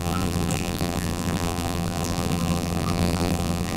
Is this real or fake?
fake